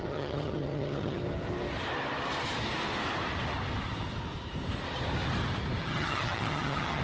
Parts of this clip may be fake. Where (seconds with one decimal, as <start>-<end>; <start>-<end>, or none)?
0.0-1.2; 5.8-7.0